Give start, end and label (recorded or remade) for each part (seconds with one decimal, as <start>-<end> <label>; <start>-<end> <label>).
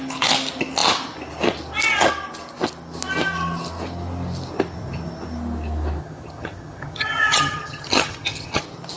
0.0-6.0 recorded; 6.0-8.6 remade; 8.6-9.0 recorded